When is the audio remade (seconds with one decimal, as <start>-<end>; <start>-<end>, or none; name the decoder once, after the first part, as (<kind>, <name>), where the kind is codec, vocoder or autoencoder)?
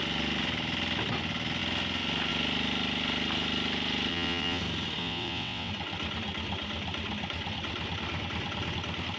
4.1-4.6 (vocoder, WaveNeXt); 5.0-5.7